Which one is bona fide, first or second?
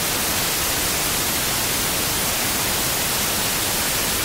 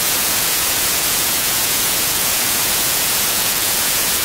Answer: first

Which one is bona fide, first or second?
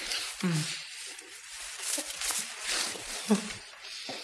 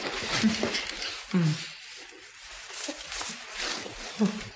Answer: second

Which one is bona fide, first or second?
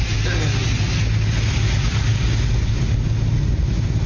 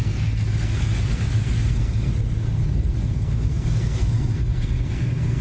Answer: first